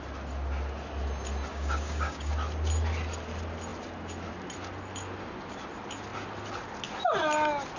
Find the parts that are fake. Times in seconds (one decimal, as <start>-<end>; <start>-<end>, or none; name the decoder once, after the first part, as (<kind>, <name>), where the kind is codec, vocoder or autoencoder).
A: 1.5-2.3 (codec, DAC)